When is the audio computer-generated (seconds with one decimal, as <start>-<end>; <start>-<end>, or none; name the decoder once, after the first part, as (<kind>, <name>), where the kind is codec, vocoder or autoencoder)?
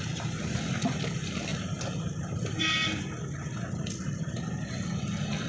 1.5-3.0 (vocoder, BigVGAN v2)